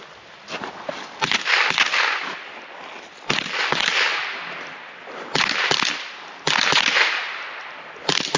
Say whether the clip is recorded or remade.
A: remade